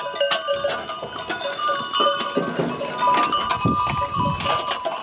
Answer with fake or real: real